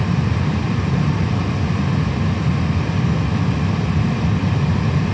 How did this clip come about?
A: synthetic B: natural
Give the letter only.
B